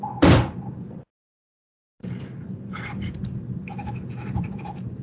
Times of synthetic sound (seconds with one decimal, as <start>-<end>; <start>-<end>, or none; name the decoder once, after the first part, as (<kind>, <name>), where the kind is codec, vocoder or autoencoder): none